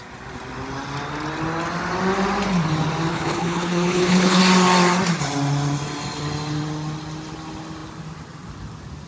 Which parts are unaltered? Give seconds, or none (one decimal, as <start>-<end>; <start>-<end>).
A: 0.0-3.1; 4.4-9.1